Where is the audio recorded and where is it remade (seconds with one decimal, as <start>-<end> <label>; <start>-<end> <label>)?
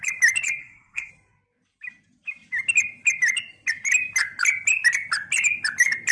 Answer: 0.0-0.6 recorded; 0.6-1.1 remade; 1.1-6.1 recorded